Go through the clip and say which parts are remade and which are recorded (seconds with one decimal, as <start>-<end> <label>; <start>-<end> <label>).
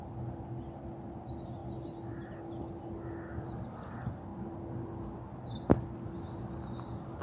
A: 0.0-7.2 recorded